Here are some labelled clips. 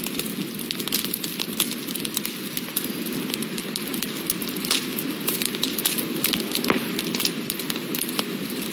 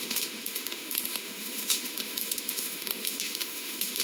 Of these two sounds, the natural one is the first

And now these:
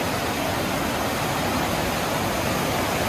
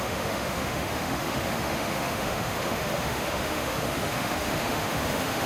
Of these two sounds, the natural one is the first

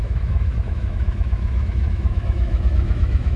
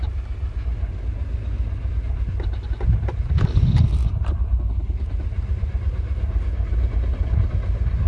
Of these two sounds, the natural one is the second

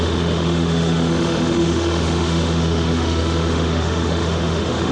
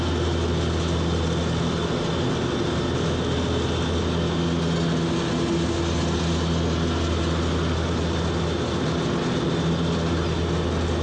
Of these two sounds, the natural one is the second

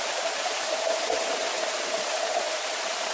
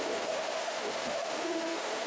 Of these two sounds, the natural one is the first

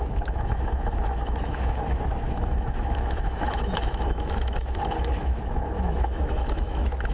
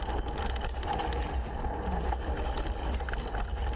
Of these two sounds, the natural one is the second